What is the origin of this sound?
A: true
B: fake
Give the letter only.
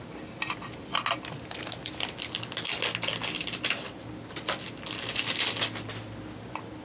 A